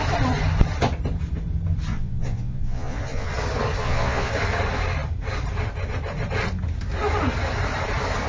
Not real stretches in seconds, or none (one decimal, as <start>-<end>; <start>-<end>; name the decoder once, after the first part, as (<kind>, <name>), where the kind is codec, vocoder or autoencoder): 1.9-3.3 (vocoder, Vocos); 3.8-4.3